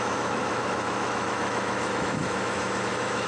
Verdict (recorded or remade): remade